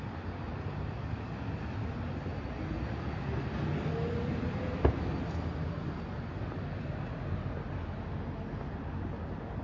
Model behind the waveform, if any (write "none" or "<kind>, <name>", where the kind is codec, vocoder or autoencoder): none